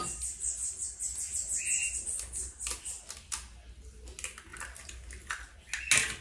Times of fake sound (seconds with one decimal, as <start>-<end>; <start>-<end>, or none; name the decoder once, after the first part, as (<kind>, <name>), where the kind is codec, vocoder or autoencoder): none

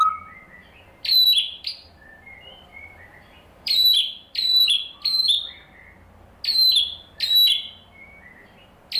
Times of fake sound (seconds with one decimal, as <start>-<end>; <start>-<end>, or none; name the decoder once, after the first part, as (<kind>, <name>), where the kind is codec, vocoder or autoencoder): 0.6-4.8 (vocoder, BigVGAN v2)